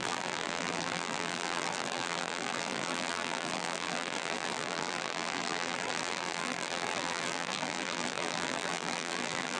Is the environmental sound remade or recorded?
remade